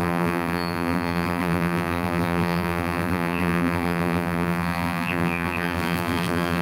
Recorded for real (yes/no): no